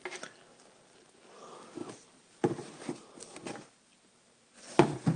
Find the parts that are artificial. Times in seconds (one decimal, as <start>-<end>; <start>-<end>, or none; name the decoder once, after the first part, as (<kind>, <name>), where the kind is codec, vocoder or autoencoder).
1.8-2.9 (vocoder, BigVGAN v2)